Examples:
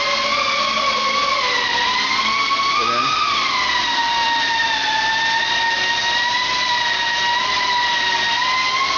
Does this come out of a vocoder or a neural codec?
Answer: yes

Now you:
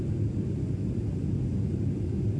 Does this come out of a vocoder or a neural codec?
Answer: no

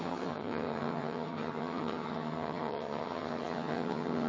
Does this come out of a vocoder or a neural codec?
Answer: yes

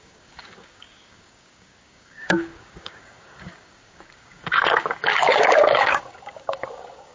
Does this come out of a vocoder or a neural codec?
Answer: yes